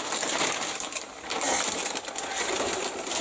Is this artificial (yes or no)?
yes